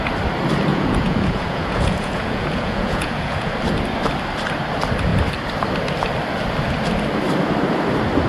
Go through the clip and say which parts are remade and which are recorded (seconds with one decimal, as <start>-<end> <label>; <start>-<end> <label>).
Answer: 0.0-0.7 recorded; 0.7-3.5 remade; 3.5-8.3 recorded